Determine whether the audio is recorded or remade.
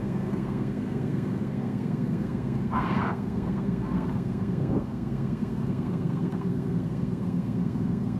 remade